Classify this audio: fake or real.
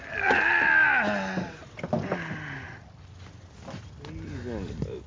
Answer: real